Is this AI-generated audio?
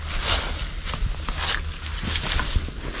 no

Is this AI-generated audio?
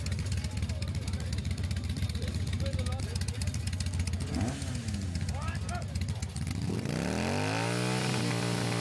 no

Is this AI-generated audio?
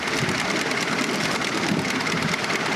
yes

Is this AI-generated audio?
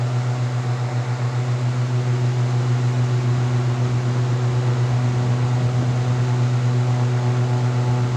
no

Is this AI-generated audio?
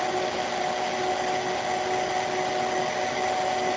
no